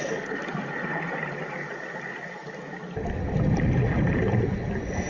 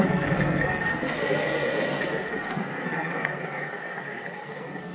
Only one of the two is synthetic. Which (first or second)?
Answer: second